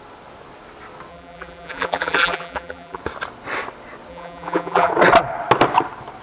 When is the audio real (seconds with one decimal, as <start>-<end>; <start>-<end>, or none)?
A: 0.0-1.1; 3.0-4.1; 4.9-6.2